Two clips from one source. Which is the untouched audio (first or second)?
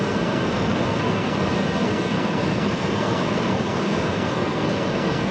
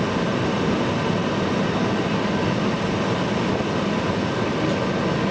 second